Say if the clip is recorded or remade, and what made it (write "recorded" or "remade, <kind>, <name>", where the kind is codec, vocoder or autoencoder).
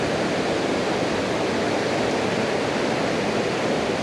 recorded